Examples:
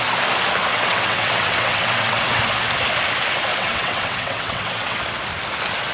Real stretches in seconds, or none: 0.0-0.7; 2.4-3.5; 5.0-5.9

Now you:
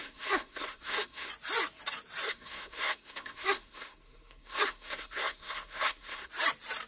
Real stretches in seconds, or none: 1.3-2.2; 6.3-6.9

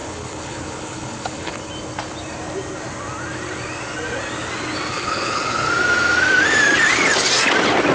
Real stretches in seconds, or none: 1.7-4.9; 5.7-7.9